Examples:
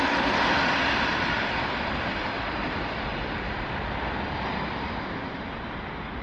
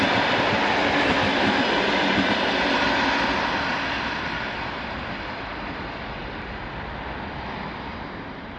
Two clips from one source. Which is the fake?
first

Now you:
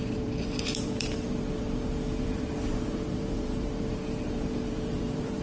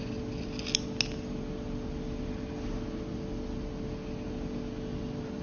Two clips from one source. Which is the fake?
first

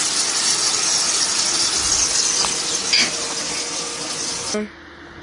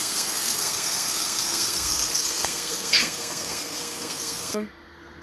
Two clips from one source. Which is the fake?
second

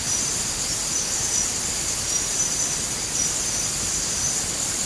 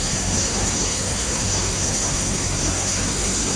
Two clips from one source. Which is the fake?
second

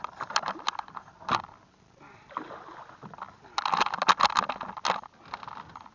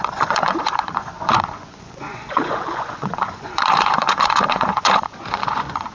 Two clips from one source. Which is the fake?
second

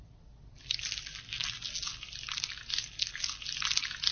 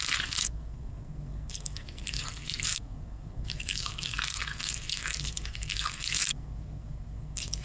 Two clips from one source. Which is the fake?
second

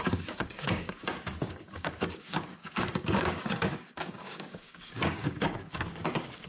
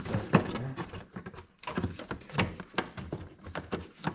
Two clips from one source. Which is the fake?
first